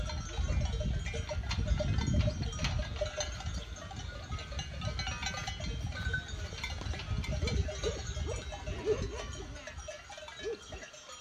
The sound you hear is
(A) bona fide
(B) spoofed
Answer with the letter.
A